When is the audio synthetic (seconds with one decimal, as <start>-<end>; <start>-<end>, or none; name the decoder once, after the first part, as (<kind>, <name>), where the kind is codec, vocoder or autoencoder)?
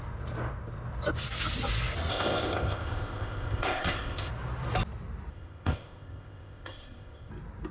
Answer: 2.1-4.3 (codec, ZipCodec); 5.3-7.3